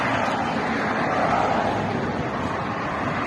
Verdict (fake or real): real